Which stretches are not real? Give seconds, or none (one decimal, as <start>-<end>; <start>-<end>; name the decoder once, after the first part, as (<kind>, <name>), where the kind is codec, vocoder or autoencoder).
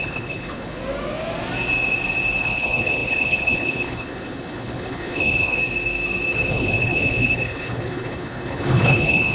0.0-0.8 (codec, HILCodec); 2.4-5.6; 6.5-9.3